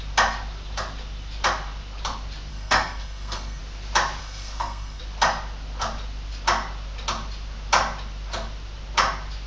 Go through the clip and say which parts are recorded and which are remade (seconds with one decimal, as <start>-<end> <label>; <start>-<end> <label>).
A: 0.0-2.5 recorded; 2.5-3.6 remade; 3.6-4.2 recorded; 4.2-5.0 remade; 5.0-9.5 recorded